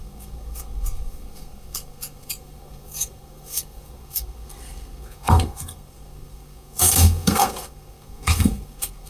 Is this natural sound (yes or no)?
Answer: no